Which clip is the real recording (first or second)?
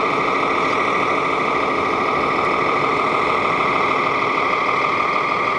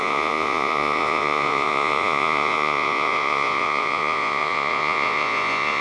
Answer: first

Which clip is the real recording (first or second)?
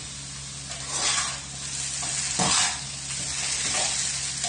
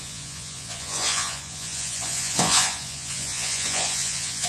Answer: first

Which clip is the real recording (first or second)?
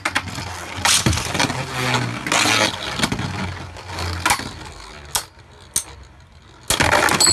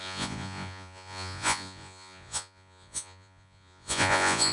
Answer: first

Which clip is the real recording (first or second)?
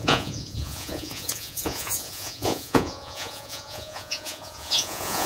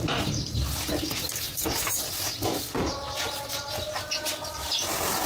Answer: second